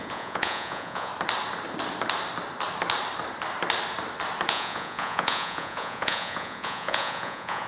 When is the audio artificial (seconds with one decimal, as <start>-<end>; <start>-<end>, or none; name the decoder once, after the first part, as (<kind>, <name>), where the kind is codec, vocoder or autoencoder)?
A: 0.0-1.1 (vocoder, Vocos); 4.5-7.7